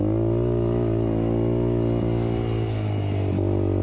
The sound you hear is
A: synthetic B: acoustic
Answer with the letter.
B